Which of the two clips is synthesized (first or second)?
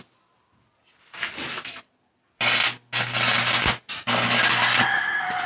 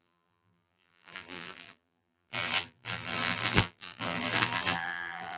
second